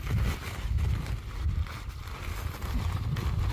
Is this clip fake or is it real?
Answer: real